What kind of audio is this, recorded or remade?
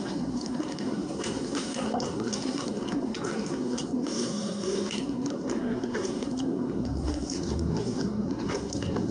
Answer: remade